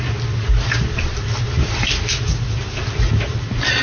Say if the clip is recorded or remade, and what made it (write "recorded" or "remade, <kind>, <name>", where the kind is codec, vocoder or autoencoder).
recorded